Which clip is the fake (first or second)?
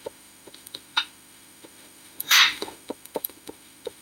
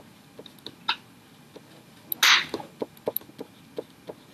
first